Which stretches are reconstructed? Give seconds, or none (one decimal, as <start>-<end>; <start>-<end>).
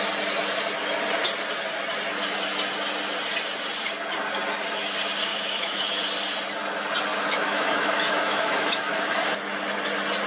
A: 5.3-6.0; 7.1-9.1